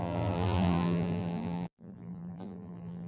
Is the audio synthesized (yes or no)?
yes